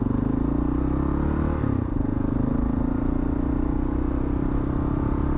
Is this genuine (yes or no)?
yes